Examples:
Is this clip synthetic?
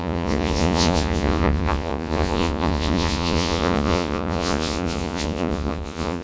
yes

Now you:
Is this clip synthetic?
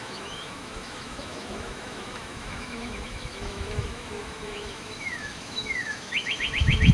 yes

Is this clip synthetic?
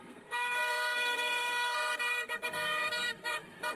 yes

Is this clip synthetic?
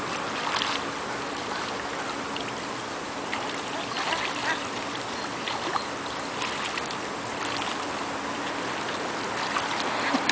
no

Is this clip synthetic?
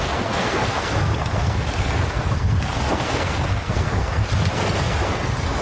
yes